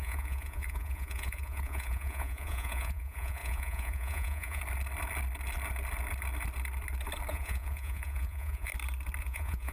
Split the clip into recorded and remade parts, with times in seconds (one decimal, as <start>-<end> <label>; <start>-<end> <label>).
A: 0.0-4.6 remade; 4.6-7.3 recorded; 7.3-8.7 remade; 8.7-9.2 recorded; 9.2-9.7 remade